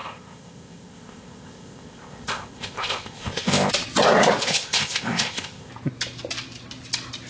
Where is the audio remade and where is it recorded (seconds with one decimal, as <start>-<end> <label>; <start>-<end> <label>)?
0.0-3.7 remade; 3.7-4.4 recorded; 4.4-5.7 remade; 5.7-7.3 recorded